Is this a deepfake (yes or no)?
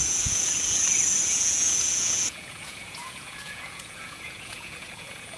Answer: yes